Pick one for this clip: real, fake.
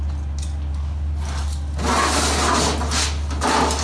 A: real